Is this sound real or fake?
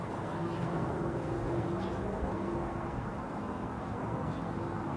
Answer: fake